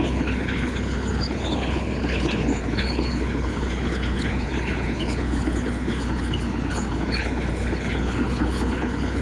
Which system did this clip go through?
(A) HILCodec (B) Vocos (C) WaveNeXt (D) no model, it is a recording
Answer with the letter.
A